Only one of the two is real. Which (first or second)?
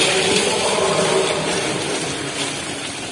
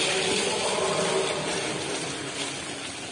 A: second